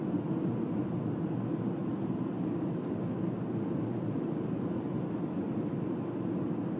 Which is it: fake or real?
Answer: real